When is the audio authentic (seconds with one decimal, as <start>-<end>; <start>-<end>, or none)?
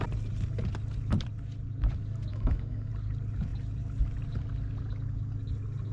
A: 0.0-2.3; 2.9-5.9